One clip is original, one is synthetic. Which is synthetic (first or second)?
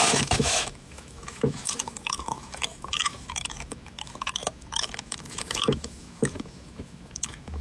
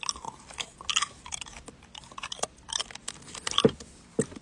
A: first